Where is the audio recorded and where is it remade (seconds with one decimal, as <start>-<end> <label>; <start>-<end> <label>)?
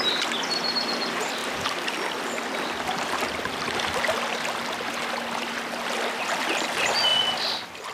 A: 0.0-7.9 recorded